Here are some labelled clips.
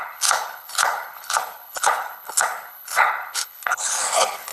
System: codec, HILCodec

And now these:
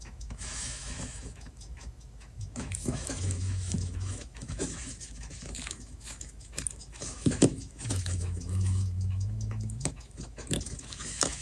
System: autoencoder, DAC-VAE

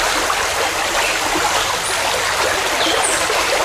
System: none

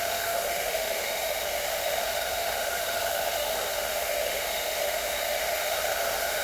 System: autoencoder, DAC-VAE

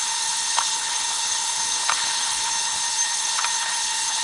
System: codec, HILCodec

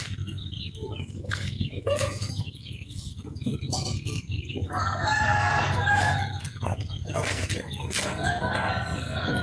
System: codec, SNAC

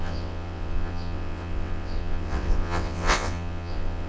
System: vocoder, WaveNeXt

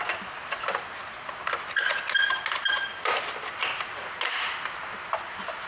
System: none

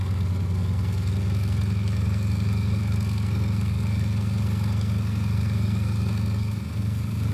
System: codec, SNAC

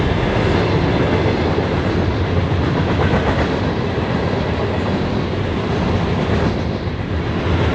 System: none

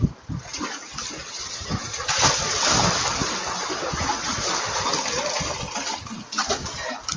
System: none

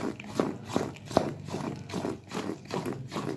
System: none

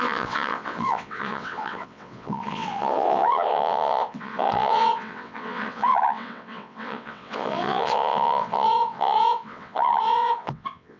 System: vocoder, WaveNeXt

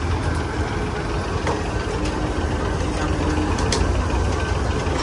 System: none